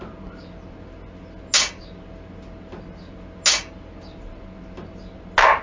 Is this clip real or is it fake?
real